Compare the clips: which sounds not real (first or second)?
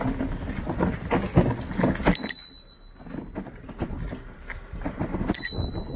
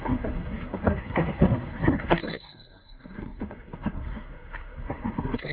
second